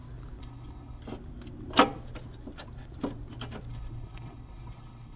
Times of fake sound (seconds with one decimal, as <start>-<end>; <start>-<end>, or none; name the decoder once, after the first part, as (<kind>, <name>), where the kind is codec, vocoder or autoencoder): 0.4-1.0 (codec, HILCodec); 3.7-5.2